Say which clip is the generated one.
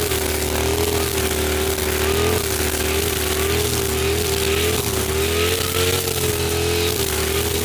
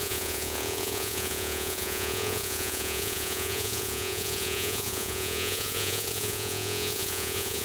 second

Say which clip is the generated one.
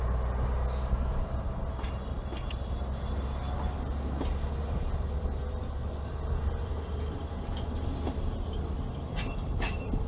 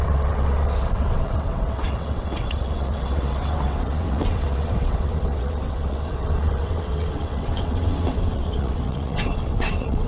second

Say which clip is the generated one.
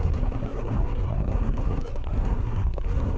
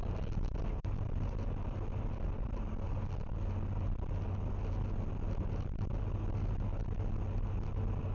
first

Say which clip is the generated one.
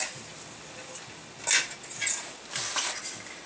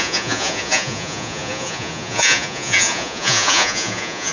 second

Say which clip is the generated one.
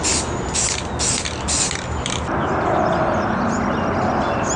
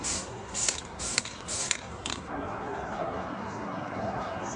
second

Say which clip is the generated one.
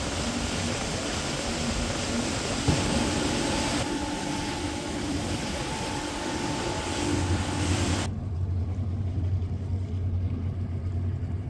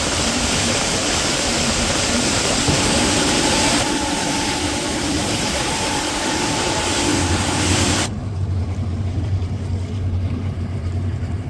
second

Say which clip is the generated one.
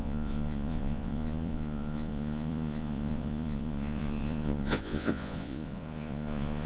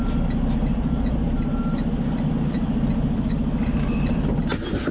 first